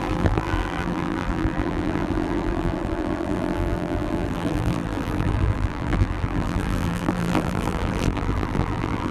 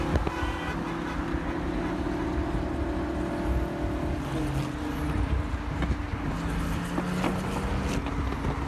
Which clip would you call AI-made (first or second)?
first